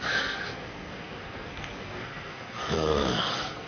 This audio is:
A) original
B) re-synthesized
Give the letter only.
B